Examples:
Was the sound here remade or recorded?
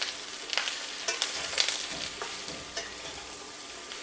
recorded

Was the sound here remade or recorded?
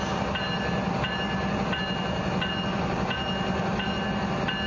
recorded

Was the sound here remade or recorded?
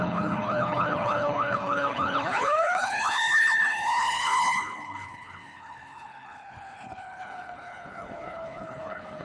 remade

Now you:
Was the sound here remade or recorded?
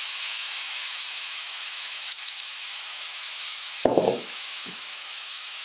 remade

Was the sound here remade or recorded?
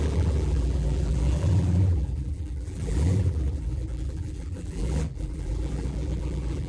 remade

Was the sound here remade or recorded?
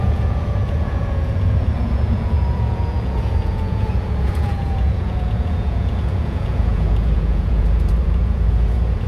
remade